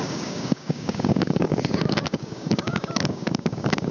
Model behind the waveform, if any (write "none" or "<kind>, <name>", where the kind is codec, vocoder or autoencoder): codec, DAC